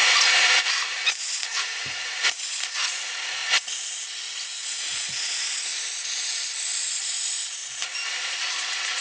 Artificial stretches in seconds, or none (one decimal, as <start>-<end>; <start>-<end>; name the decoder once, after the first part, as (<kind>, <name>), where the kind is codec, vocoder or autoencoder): 1.2-3.4 (vocoder, Vocos); 4.5-5.7; 7.0-7.6; 8.3-9.0